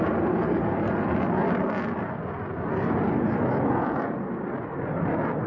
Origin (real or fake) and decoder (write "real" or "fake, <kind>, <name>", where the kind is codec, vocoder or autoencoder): real